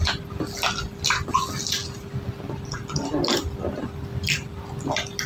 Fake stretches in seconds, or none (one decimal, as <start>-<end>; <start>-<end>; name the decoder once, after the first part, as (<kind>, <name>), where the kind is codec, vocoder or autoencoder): none

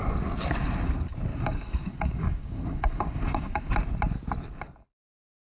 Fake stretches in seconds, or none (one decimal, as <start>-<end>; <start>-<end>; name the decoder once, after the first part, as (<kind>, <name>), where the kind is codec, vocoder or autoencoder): 1.3-3.7 (codec, DAC)